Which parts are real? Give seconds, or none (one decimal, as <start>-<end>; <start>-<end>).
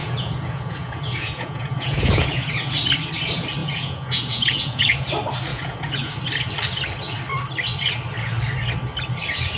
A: 2.5-3.6; 5.1-5.5; 6.2-9.6